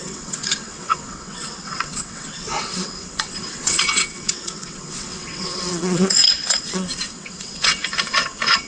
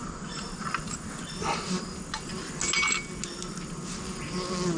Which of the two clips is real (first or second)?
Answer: second